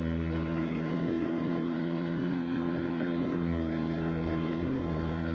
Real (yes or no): no